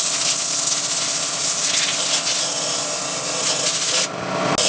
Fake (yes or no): no